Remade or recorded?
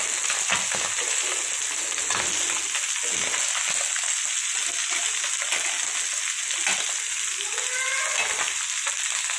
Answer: recorded